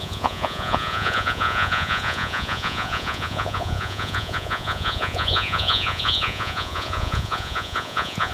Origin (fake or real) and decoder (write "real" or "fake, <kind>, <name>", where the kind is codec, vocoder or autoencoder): fake, vocoder, Vocos